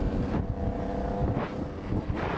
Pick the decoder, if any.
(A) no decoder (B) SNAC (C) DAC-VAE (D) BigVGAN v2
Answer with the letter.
A